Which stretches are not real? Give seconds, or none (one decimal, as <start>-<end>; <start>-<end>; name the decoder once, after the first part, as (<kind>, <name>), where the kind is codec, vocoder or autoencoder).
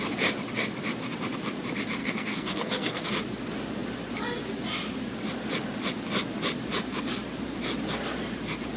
2.0-3.1 (codec, SNAC)